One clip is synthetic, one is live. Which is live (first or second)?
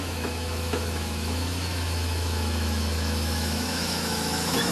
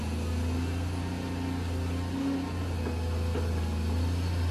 second